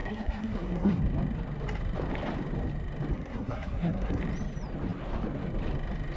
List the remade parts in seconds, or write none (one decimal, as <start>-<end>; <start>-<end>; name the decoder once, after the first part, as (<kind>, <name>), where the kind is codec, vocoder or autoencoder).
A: 0.0-1.0 (codec, SNAC); 3.1-4.2